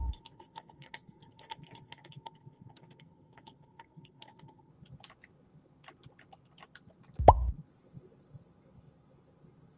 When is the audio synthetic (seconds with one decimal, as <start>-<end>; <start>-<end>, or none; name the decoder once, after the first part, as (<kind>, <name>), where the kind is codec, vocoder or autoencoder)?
0.0-4.7 (codec, SNAC)